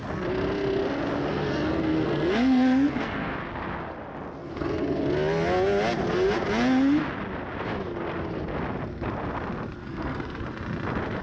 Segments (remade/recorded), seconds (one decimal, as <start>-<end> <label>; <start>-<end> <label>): 0.0-1.3 recorded; 1.3-3.4 remade; 3.4-4.4 recorded; 4.4-5.0 remade; 5.0-9.8 recorded; 9.8-10.4 remade; 10.4-11.2 recorded